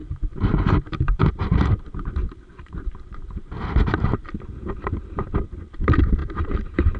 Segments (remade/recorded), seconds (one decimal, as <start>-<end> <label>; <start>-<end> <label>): 0.0-4.2 remade; 4.2-5.6 recorded; 5.6-7.0 remade